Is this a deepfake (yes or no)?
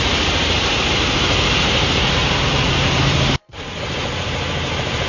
yes